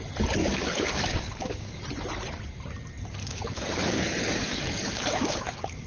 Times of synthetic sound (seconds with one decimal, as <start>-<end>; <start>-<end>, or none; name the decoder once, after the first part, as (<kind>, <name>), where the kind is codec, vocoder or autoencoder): 0.4-1.8 (codec, DAC); 3.2-5.9